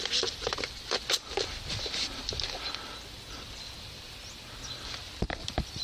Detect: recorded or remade recorded